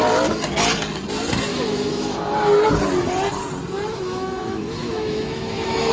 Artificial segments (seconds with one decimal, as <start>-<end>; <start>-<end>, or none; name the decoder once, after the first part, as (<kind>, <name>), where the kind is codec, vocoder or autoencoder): 1.5-2.2 (autoencoder, DAC-VAE); 3.9-5.9